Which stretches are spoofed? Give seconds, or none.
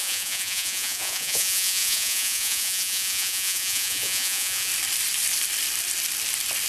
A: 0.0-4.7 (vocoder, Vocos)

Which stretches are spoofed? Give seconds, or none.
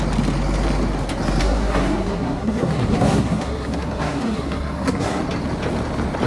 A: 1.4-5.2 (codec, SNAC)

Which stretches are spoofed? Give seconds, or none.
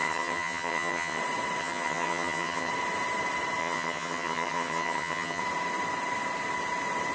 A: 0.0-1.2 (vocoder, HiFi-GAN); 1.6-2.7; 3.6-5.4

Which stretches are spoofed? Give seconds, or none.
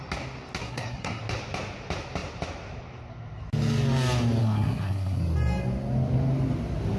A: 0.6-1.2 (codec, SNAC); 4.4-5.2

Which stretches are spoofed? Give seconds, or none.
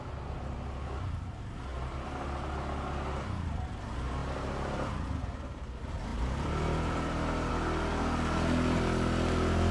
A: 4.2-4.9 (vocoder, BigVGAN v2); 6.1-7.5